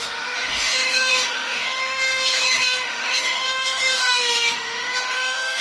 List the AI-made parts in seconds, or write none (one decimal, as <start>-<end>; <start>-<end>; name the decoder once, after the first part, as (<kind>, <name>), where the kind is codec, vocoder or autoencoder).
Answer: 0.0-5.6 (autoencoder, DAC-VAE)